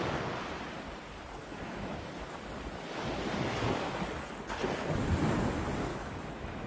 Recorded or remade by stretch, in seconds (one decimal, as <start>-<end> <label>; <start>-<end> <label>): 0.0-1.4 recorded; 1.4-2.1 remade; 2.1-5.9 recorded; 5.9-6.7 remade